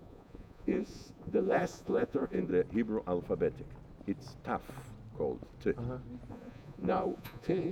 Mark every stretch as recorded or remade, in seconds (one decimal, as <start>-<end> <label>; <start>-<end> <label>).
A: 0.0-2.5 remade; 2.5-6.3 recorded; 6.3-7.7 remade